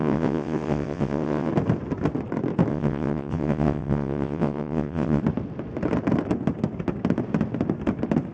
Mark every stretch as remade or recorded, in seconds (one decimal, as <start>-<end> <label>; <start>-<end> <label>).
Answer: 0.0-1.5 remade; 1.5-2.7 recorded; 2.7-5.2 remade; 5.2-8.3 recorded